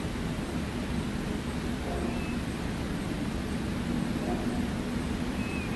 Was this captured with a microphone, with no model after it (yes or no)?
yes